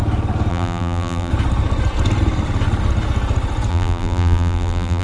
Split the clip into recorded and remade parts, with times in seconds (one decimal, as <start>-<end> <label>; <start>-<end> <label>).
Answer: 0.0-0.5 recorded; 0.5-1.3 remade; 1.3-3.7 recorded; 3.7-5.0 remade